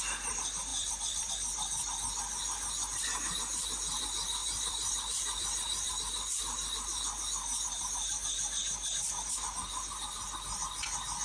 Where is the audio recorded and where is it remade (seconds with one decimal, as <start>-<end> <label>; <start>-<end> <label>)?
0.0-0.7 recorded; 0.7-1.3 remade; 1.3-4.4 recorded; 4.4-5.9 remade; 5.9-11.2 recorded